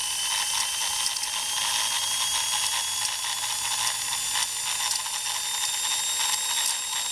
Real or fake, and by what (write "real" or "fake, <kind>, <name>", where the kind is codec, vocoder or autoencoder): real